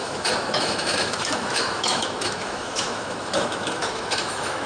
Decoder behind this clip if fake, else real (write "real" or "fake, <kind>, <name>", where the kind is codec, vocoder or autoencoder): fake, autoencoder, DAC-VAE